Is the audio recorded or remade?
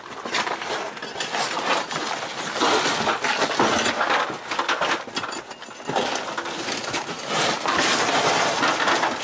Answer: recorded